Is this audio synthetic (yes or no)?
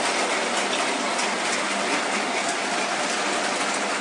no